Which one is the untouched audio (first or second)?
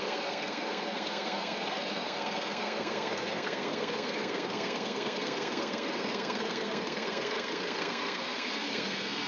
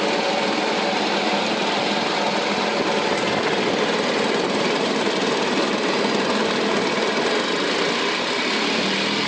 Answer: second